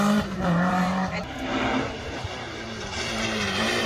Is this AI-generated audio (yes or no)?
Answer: yes